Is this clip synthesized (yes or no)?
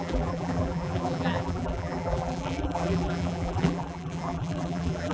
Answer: yes